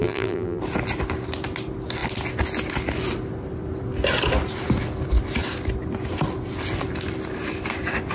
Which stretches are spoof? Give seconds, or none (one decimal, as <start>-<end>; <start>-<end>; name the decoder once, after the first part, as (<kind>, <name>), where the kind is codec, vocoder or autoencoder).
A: 0.0-0.6 (vocoder, BigVGAN v2)